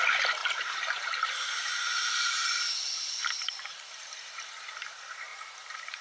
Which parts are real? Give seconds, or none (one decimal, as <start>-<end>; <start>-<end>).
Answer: 0.0-0.4; 4.0-5.3